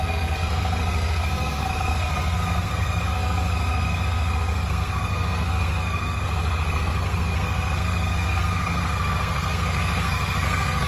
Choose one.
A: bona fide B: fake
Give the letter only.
B